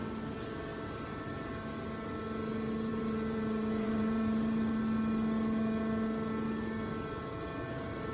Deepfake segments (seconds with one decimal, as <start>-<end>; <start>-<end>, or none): 0.7-1.5; 2.9-4.7